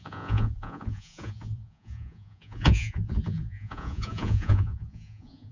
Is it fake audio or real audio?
fake